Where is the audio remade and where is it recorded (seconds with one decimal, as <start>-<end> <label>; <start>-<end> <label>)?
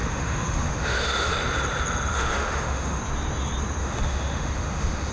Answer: 0.0-1.3 remade; 1.3-2.1 recorded; 2.1-3.0 remade; 3.0-3.8 recorded; 3.8-5.1 remade